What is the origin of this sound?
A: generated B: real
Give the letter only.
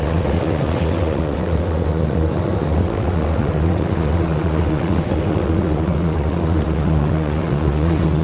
A